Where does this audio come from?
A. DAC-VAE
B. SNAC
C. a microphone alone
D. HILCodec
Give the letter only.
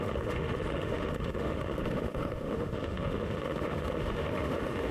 A